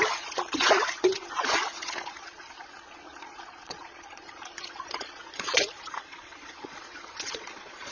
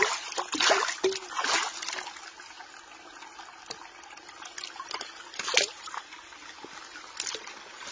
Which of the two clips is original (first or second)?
second